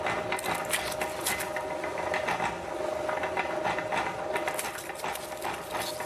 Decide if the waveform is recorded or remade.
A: recorded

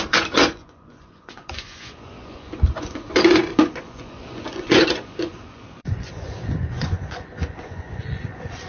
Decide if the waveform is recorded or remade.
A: remade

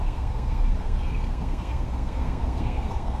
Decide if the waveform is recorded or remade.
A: remade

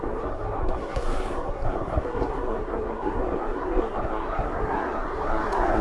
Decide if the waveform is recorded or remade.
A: remade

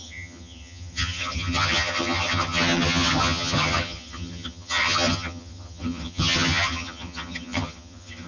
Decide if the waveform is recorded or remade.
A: remade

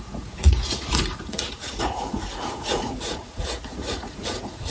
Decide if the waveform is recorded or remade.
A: remade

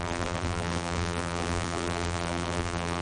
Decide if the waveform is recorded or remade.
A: remade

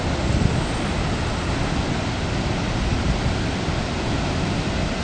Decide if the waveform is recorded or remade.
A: recorded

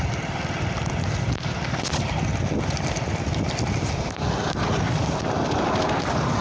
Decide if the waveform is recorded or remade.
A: recorded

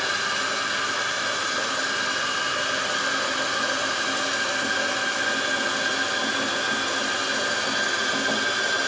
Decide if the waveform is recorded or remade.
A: recorded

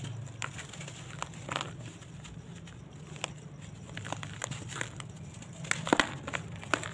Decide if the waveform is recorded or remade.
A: recorded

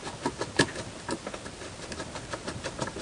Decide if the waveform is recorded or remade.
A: recorded